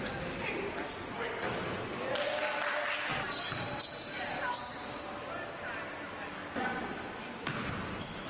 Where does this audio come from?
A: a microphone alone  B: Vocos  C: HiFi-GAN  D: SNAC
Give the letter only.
A